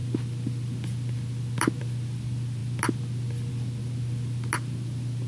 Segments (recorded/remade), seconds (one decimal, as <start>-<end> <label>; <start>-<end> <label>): 0.0-5.3 recorded